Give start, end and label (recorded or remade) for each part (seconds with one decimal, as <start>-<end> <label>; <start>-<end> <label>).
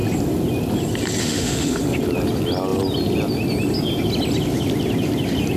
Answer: 0.0-1.2 recorded; 1.2-1.8 remade; 1.8-5.6 recorded